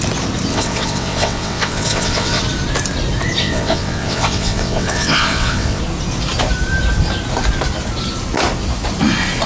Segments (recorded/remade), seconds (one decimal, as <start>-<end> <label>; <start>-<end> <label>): 0.0-0.5 recorded; 0.5-2.4 remade; 2.4-3.4 recorded; 3.4-5.8 remade; 5.8-9.5 recorded